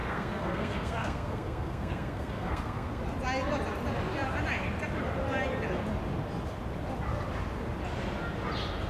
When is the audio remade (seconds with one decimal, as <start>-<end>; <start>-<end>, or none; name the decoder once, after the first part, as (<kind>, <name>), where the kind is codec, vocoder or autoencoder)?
0.0-3.0 (codec, SNAC)